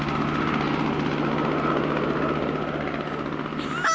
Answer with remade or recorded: recorded